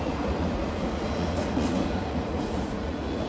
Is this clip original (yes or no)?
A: no